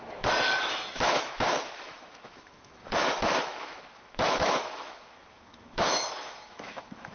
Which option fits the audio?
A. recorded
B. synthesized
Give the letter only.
B